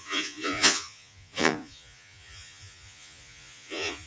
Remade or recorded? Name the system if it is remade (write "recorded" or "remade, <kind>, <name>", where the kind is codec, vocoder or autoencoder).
remade, vocoder, Vocos